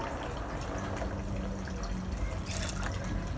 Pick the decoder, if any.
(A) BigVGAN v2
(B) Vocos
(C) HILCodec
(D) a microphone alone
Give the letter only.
D